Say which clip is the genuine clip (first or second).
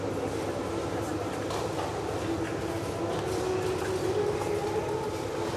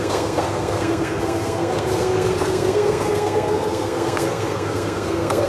first